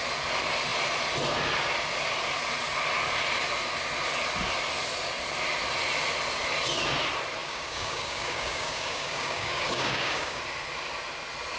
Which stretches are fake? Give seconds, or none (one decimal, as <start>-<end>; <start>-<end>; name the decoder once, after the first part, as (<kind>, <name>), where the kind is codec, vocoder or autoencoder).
7.4-10.4 (codec, DAC)